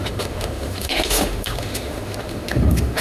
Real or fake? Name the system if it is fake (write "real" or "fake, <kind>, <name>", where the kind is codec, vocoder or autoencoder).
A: fake, autoencoder, DAC-VAE